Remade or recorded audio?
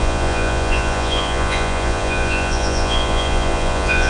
remade